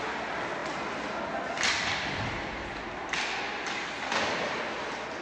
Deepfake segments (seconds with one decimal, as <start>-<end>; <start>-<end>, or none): none